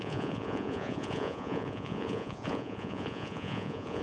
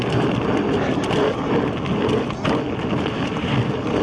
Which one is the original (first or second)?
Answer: second